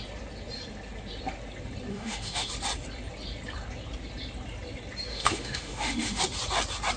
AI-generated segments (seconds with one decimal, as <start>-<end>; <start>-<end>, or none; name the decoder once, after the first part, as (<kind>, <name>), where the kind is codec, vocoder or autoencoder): 1.9-2.5 (autoencoder, DAC-VAE); 5.1-6.2